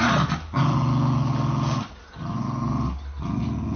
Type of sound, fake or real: real